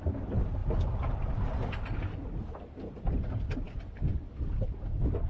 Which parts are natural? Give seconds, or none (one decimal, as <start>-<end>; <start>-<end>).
0.0-5.3